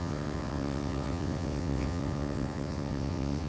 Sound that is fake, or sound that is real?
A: fake